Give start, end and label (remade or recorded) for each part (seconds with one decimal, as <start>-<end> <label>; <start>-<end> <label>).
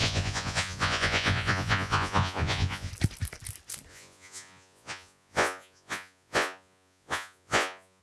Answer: 0.0-2.9 remade; 2.9-3.9 recorded; 3.9-8.0 remade